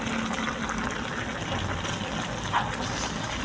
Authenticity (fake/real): real